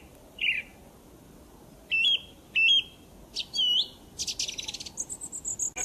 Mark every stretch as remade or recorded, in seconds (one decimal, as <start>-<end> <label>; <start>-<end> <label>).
0.0-5.8 recorded